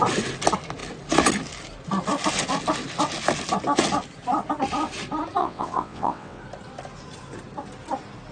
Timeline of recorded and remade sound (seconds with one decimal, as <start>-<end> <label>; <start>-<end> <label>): 0.0-5.4 recorded; 5.4-6.4 remade; 6.4-8.3 recorded